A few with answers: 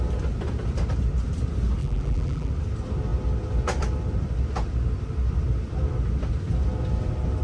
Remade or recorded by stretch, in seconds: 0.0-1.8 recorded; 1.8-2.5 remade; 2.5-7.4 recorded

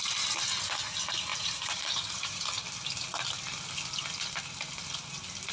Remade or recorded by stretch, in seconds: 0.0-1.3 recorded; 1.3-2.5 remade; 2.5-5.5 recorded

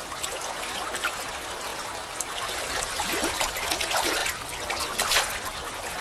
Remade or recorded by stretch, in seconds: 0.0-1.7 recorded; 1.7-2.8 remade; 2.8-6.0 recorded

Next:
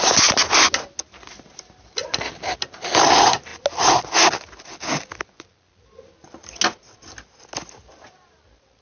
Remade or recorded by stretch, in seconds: 0.0-8.8 recorded

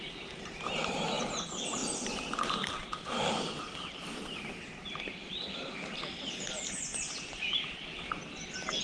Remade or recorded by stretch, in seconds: 0.0-1.8 recorded; 1.8-6.4 remade; 6.4-8.8 recorded